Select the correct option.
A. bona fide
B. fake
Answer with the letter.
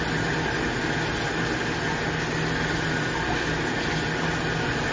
A